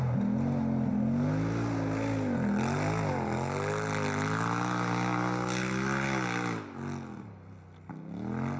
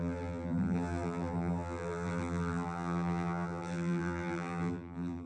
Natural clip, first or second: first